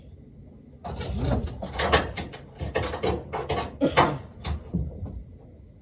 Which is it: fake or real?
real